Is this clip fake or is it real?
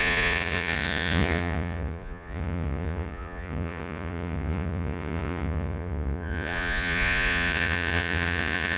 fake